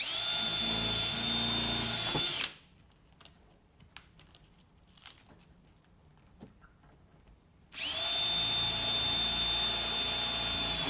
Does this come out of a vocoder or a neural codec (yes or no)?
no